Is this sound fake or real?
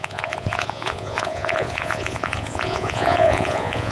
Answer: fake